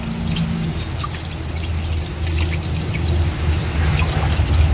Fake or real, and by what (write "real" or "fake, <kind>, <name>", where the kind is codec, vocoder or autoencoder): real